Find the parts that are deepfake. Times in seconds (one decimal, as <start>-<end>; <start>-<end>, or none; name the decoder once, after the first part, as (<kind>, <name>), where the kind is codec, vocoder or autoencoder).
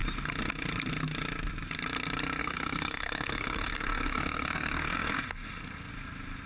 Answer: 2.4-5.9 (codec, SNAC)